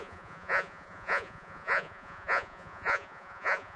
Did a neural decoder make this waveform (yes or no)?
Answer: yes